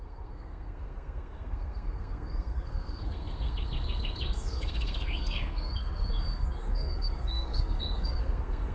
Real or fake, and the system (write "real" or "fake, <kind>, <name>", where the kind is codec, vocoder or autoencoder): fake, codec, SNAC